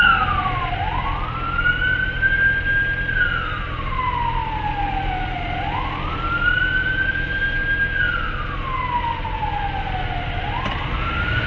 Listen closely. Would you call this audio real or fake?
real